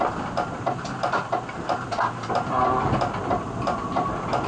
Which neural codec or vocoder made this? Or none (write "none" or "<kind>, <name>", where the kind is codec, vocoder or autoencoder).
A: none